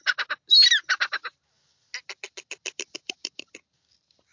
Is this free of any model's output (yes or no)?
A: yes